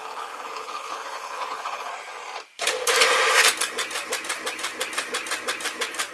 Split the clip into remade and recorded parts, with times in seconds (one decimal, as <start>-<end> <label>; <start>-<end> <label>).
0.0-1.9 remade; 1.9-6.1 recorded